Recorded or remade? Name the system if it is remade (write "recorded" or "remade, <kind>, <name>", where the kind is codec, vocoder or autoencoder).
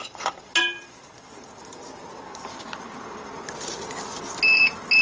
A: recorded